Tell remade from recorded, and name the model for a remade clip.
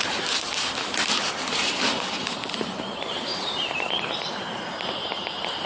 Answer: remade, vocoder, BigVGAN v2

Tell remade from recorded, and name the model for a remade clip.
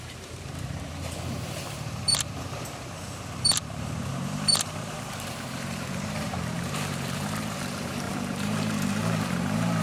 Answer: remade, vocoder, BigVGAN v2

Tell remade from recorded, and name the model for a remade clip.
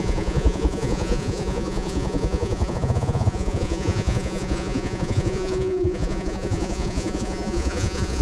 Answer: remade, vocoder, Vocos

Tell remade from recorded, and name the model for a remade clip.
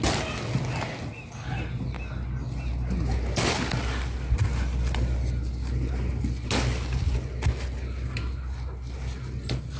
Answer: recorded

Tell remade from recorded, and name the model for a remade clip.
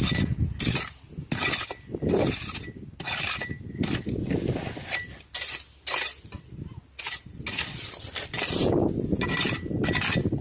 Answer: recorded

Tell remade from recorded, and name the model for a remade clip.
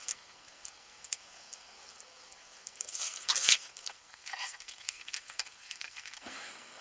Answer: remade, codec, SNAC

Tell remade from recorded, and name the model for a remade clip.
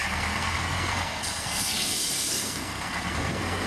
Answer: remade, codec, SNAC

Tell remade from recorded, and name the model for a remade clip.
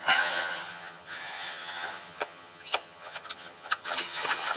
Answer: remade, vocoder, HiFi-GAN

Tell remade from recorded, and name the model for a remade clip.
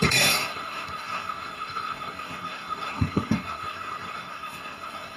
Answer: remade, codec, SNAC